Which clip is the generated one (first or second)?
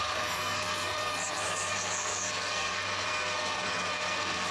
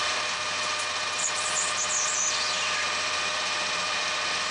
first